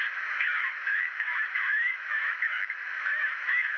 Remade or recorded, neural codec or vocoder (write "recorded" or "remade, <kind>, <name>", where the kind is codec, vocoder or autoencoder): remade, autoencoder, DAC-VAE